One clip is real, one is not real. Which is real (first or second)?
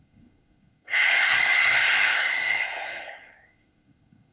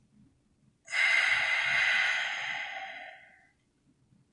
second